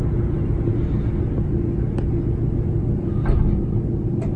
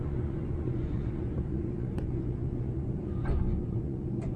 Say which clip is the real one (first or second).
first